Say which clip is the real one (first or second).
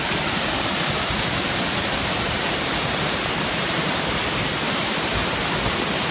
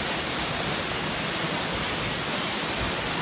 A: second